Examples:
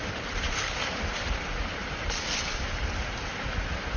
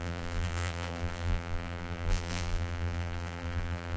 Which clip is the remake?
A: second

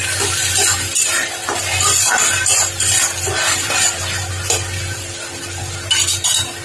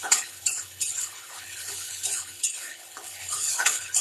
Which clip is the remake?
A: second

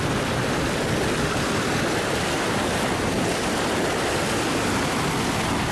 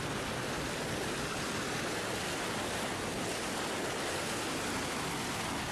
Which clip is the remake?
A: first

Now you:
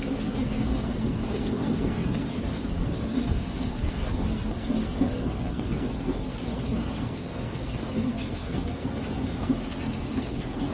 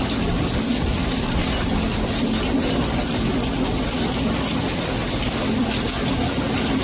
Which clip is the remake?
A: first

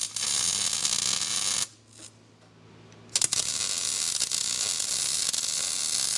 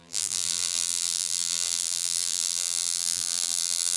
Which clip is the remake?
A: second